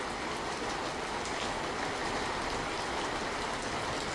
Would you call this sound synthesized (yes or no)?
no